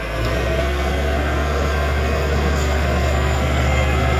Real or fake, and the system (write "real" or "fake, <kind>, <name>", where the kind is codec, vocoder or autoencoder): fake, codec, SNAC